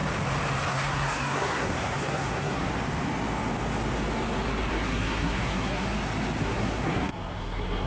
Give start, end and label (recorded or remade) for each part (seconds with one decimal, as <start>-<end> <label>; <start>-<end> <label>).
0.0-0.7 recorded; 0.7-2.7 remade; 2.7-4.7 recorded; 4.7-5.9 remade; 5.9-6.4 recorded; 6.4-7.9 remade